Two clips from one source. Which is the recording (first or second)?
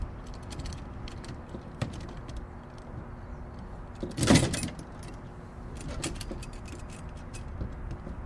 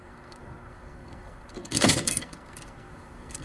first